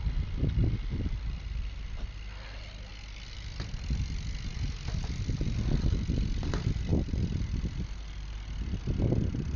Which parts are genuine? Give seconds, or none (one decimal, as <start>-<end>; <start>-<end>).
0.0-9.6

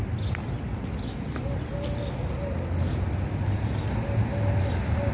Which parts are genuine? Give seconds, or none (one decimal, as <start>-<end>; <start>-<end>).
0.0-5.1

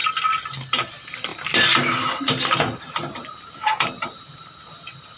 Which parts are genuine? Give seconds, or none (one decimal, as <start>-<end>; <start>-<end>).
0.0-0.9

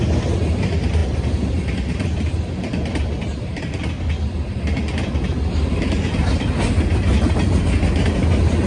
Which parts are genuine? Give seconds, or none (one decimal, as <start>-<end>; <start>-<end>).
0.0-1.0; 3.6-8.7

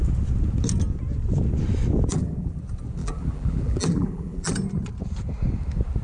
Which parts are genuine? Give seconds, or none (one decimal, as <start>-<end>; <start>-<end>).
0.0-2.1; 2.6-3.0; 4.5-6.0